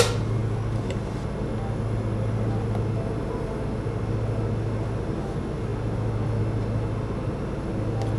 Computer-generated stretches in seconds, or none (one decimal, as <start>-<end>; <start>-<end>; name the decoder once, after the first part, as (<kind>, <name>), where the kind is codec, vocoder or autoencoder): none